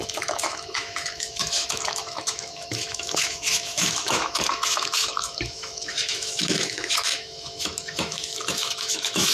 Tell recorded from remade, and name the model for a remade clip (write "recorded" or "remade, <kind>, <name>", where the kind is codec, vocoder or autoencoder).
remade, autoencoder, DAC-VAE